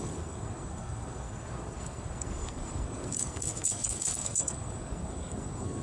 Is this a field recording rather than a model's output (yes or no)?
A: no